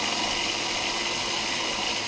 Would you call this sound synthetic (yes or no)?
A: no